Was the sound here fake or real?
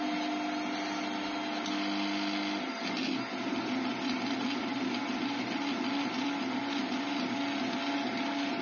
real